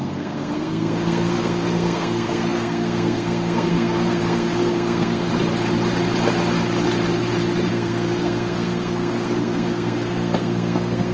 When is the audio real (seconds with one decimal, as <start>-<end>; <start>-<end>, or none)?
5.3-7.7

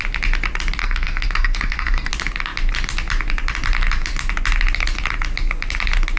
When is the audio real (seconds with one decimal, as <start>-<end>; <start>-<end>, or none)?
0.0-0.8; 2.1-6.2

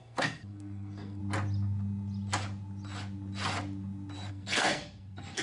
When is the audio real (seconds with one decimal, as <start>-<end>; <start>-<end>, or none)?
1.2-4.3

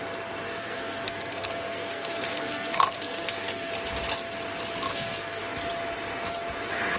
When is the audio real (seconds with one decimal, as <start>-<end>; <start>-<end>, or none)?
0.0-0.6; 3.7-4.9; 5.4-7.0

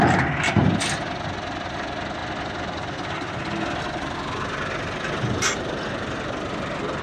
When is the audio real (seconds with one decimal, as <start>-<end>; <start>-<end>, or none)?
0.0-7.0

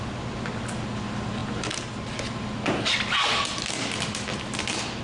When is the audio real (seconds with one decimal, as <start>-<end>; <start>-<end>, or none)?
0.0-5.0

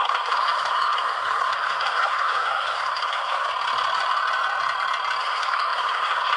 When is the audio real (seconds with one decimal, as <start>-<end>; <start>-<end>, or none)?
3.5-5.2

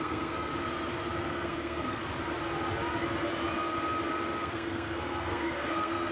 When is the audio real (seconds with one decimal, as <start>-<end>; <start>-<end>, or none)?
0.5-1.3; 2.0-4.4